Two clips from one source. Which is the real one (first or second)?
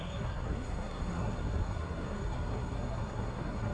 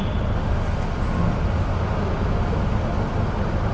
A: second